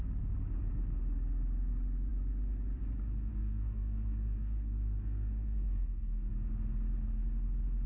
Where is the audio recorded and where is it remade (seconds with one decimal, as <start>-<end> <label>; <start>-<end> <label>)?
0.0-3.3 recorded; 3.3-6.3 remade; 6.3-7.9 recorded